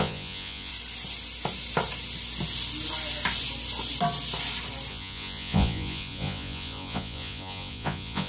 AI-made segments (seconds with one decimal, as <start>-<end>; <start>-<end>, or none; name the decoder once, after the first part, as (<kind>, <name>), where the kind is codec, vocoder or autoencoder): 0.0-0.7 (vocoder, Vocos); 4.9-8.3

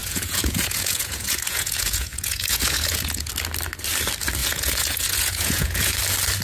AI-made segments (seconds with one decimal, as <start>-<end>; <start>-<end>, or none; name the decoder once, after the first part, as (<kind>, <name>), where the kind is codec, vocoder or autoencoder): 0.0-3.3 (vocoder, Vocos); 4.4-6.0

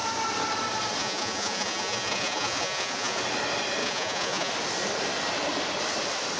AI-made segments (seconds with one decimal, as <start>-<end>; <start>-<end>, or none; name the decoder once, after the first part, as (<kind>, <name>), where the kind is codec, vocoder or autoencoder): 1.0-3.2 (vocoder, Vocos); 3.8-4.5